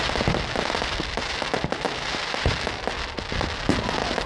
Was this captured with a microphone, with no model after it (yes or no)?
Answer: yes